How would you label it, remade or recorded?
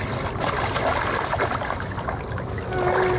recorded